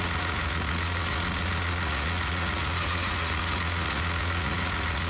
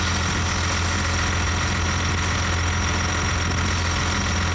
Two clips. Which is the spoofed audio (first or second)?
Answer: first